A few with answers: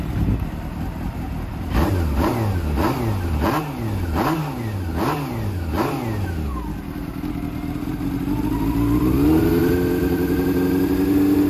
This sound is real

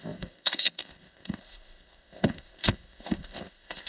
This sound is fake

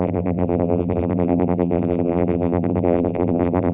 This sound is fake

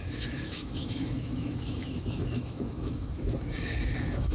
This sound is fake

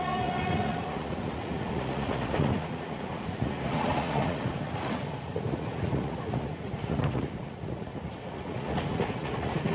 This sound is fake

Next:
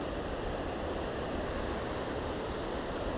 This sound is real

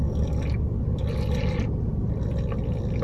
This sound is real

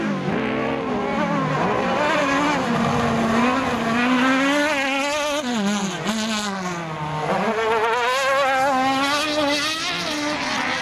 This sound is real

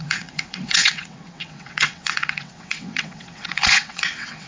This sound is fake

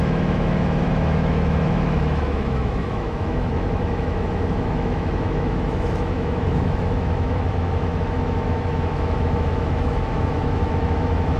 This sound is fake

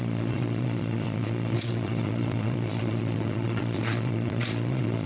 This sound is fake